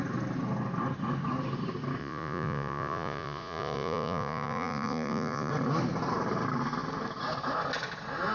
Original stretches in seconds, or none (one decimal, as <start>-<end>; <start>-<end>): 0.0-2.0; 5.5-8.3